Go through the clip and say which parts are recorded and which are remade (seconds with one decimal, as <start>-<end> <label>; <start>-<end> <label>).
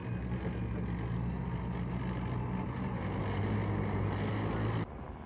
0.0-5.3 recorded